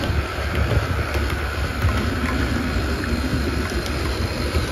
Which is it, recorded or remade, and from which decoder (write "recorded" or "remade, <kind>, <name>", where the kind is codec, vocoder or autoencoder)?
remade, vocoder, BigVGAN v2